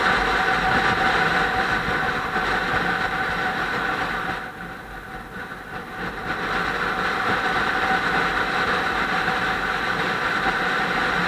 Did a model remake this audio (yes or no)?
no